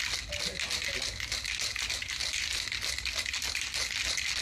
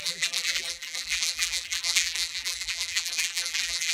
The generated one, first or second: second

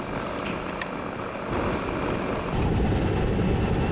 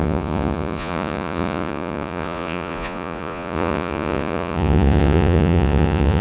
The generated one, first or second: second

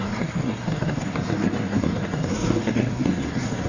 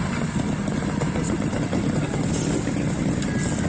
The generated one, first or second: first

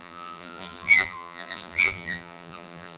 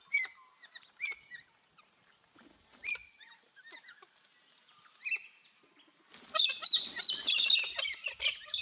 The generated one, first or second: first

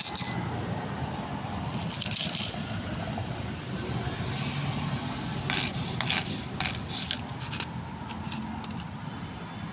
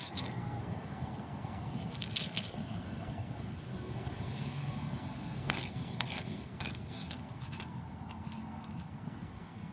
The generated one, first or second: second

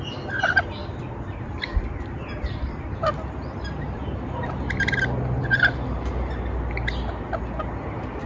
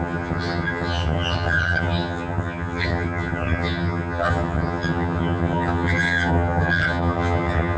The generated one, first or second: second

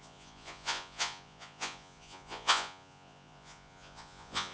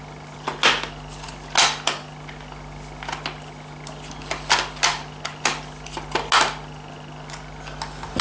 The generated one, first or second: first